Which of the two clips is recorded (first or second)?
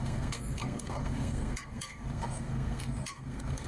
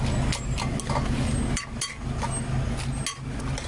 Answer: second